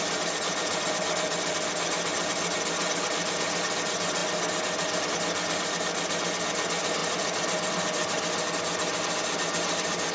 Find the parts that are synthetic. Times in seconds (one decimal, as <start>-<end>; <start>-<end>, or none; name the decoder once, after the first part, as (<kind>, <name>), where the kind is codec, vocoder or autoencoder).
none

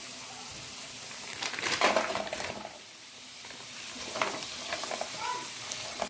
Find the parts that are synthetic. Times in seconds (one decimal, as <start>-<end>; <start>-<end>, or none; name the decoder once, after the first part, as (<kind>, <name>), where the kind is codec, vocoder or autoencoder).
0.5-4.0 (vocoder, BigVGAN v2)

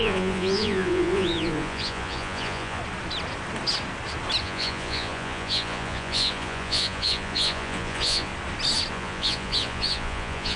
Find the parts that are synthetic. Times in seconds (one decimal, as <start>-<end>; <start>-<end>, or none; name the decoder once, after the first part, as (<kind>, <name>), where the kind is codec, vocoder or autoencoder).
0.0-2.8 (vocoder, Vocos); 4.4-8.3; 8.9-10.6

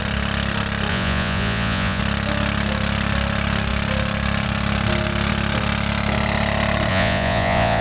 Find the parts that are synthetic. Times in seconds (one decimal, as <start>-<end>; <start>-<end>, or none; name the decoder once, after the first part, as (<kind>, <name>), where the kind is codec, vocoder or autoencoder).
0.9-2.0 (vocoder, Vocos); 6.9-7.8

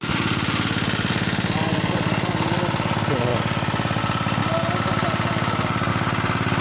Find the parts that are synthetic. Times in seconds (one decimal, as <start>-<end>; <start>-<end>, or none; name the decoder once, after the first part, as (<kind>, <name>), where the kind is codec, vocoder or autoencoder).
none

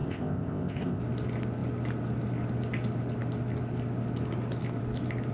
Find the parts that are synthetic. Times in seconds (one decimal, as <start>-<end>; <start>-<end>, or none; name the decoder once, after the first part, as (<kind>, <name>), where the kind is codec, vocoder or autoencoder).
0.0-1.0 (codec, ZipCodec)